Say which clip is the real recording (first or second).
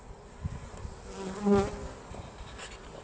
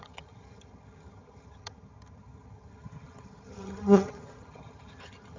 first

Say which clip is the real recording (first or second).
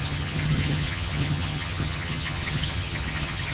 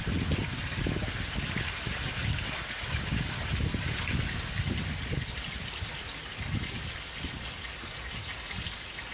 second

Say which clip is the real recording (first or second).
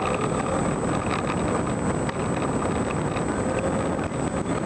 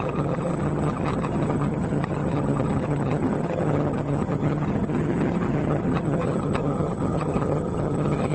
first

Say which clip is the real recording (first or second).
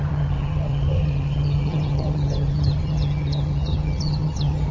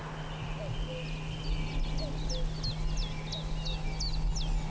second